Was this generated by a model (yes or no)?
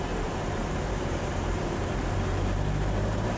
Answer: yes